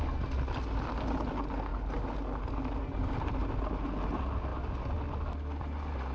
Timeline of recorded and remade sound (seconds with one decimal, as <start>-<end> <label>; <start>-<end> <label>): 0.0-6.1 recorded

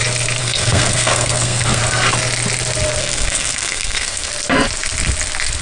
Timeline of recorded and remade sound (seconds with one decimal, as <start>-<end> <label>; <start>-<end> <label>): 0.0-0.4 recorded; 0.4-1.8 remade; 1.8-3.0 recorded; 3.0-4.3 remade; 4.3-5.6 recorded

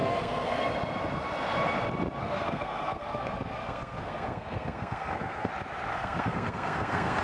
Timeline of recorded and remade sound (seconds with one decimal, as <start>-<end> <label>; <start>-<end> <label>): 0.0-0.6 remade; 0.6-2.2 recorded; 2.2-5.5 remade; 5.5-5.9 recorded; 5.9-7.2 remade

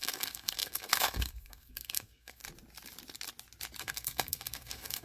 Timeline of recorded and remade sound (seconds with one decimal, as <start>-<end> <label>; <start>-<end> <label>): 0.0-2.4 remade; 2.4-3.8 recorded; 3.8-5.0 remade

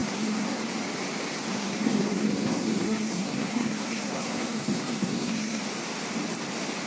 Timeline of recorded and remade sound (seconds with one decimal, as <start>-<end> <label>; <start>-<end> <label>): 0.0-0.6 remade; 0.6-1.5 recorded; 1.5-5.6 remade; 5.6-6.9 recorded

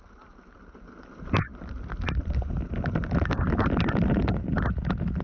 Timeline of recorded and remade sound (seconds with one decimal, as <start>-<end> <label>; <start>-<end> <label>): 0.0-5.2 recorded